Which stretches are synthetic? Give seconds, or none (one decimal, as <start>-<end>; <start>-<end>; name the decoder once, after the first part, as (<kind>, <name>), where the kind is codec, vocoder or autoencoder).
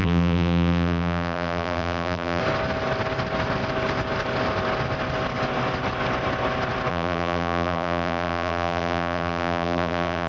0.0-2.4 (vocoder, BigVGAN v2); 6.9-10.3